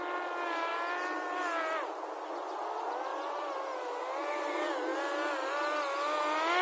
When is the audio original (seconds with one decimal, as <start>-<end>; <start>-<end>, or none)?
0.0-6.6